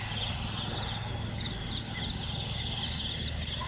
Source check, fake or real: real